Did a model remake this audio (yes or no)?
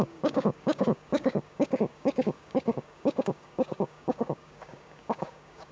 yes